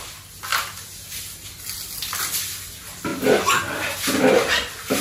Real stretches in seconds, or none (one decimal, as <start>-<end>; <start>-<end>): 0.0-5.0